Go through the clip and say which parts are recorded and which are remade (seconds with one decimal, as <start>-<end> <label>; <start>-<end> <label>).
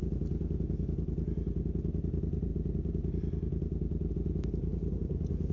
0.0-5.5 recorded